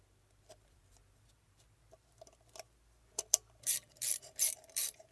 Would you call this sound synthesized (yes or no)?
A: yes